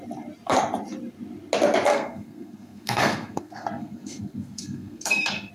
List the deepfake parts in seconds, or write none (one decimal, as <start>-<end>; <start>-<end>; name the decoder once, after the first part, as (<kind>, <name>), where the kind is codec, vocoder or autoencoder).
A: 1.9-5.5 (codec, SNAC)